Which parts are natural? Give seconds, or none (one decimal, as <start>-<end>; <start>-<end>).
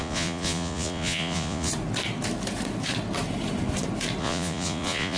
1.7-4.2